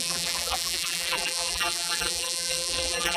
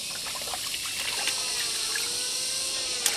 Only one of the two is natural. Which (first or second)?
second